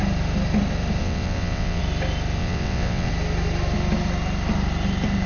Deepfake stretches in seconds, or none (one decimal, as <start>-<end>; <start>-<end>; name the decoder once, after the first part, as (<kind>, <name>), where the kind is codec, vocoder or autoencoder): 1.0-1.8 (vocoder, WaveNeXt); 2.4-3.1